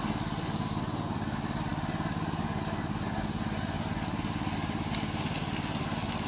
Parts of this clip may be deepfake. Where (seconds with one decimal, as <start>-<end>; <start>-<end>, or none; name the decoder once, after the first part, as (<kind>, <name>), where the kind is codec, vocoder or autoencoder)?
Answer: none